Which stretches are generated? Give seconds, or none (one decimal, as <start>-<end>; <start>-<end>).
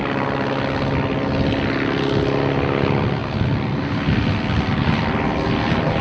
none